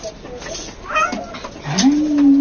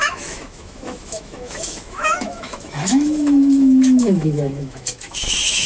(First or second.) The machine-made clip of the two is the second